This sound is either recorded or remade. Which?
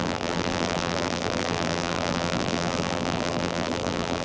remade